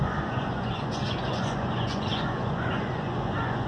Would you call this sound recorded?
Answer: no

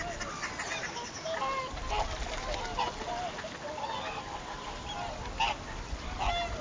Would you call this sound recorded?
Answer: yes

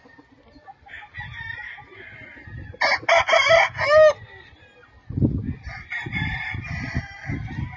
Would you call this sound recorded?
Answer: yes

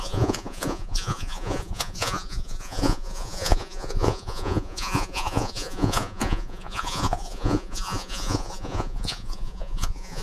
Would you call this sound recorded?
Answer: no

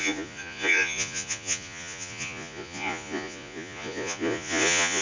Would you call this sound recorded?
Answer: no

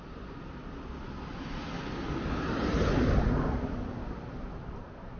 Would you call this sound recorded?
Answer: yes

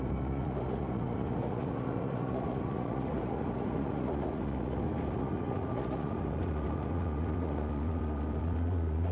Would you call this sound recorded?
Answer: no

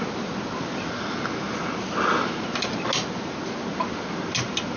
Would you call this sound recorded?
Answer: yes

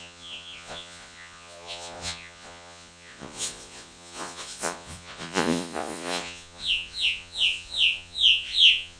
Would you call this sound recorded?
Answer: no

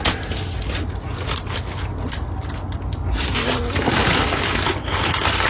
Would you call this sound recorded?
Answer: yes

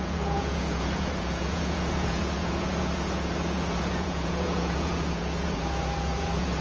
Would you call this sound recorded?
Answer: no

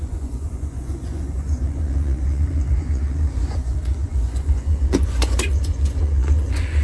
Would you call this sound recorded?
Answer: no